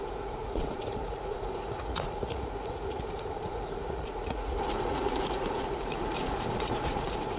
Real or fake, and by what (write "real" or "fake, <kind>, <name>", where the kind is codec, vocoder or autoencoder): fake, vocoder, Vocos